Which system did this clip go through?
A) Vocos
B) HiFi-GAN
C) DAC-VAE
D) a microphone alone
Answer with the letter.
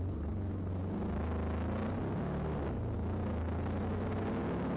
D